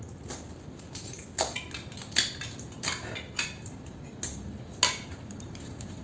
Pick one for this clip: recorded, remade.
recorded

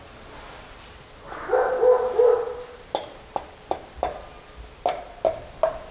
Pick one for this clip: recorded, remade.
recorded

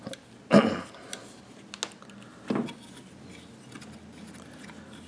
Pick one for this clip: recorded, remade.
recorded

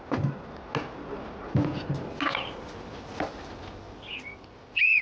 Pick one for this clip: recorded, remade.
recorded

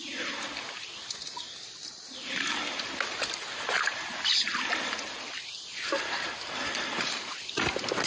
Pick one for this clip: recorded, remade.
recorded